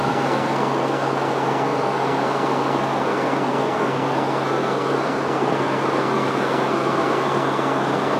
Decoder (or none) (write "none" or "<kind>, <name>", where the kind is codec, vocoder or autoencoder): codec, SNAC